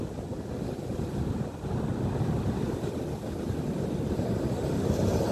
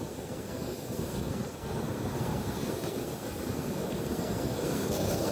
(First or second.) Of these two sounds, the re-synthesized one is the second